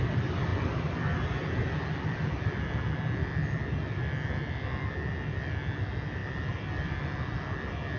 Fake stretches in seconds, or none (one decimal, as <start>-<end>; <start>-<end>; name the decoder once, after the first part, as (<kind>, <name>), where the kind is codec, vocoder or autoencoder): none